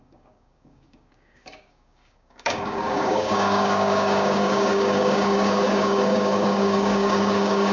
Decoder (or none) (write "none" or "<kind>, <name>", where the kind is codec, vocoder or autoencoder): codec, DAC